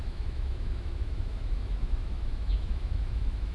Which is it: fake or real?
fake